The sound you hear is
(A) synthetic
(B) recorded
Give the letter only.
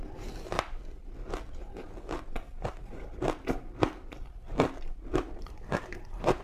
B